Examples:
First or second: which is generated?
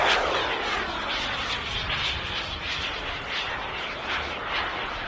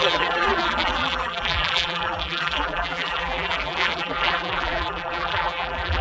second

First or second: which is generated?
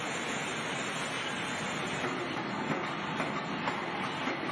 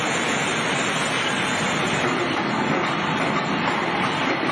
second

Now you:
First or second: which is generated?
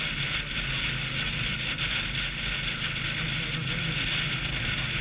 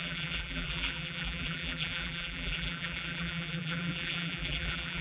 second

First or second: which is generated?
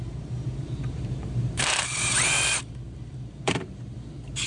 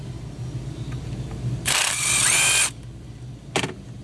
first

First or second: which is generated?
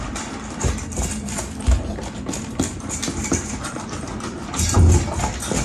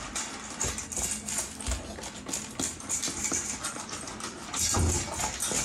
first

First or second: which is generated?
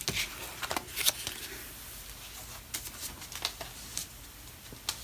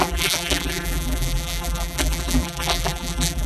second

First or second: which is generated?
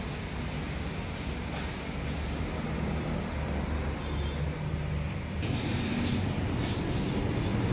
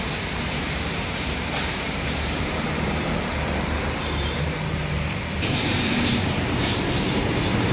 second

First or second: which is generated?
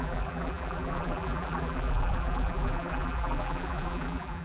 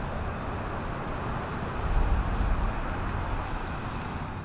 first